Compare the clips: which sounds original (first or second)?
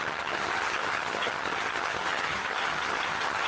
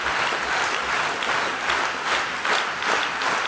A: second